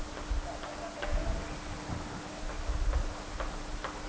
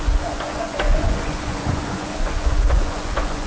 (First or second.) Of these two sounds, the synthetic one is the second